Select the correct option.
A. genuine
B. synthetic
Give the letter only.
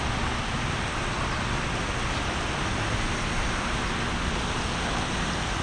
A